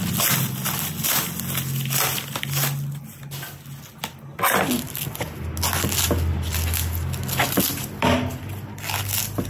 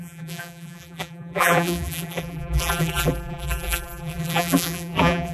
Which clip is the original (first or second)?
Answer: first